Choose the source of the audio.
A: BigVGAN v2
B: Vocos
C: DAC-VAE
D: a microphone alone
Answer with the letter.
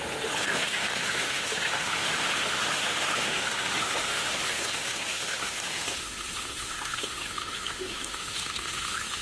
C